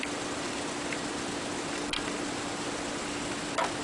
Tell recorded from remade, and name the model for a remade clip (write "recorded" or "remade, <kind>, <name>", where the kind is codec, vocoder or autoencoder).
recorded